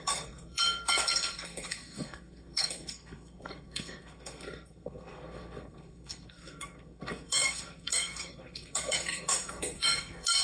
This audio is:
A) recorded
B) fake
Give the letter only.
B